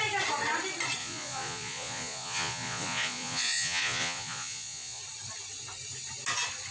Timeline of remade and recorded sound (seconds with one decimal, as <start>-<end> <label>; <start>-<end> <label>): 0.0-1.0 recorded; 1.0-5.0 remade; 5.0-6.7 recorded